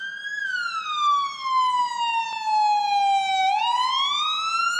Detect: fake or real real